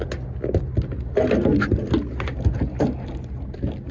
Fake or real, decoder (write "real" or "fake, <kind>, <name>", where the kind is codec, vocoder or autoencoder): real